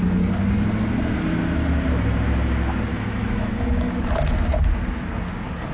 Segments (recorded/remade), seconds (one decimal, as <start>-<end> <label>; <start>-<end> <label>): 0.0-2.9 recorded; 2.9-4.0 remade; 4.0-5.7 recorded